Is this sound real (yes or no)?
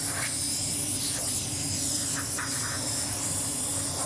yes